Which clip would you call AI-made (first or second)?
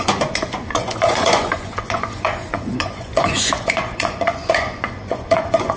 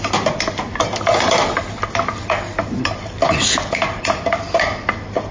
first